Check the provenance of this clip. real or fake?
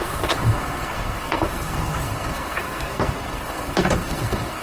fake